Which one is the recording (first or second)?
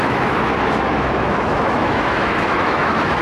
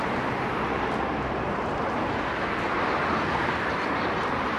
second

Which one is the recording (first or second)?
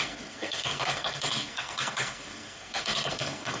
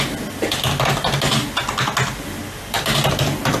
second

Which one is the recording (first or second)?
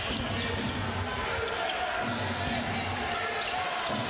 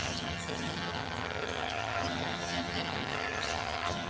first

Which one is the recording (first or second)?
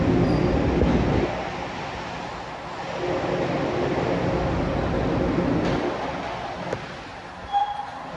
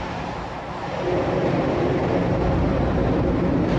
first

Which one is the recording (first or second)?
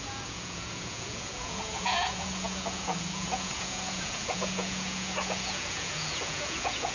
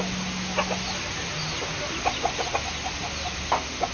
second